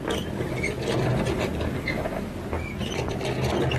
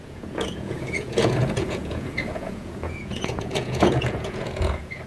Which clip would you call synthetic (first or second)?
second